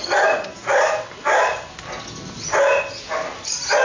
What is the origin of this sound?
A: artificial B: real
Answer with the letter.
B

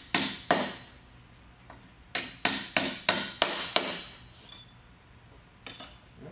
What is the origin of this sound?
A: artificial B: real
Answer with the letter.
B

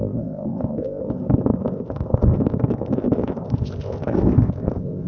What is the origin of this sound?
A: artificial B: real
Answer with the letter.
A